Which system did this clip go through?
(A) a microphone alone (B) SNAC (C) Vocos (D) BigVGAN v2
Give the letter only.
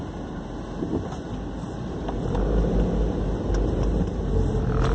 A